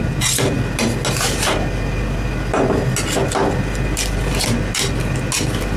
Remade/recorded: recorded